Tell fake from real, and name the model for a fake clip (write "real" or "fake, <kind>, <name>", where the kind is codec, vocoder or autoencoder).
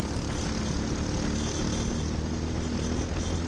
real